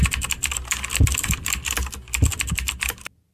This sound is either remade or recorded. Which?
recorded